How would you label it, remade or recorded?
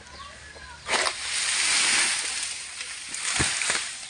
recorded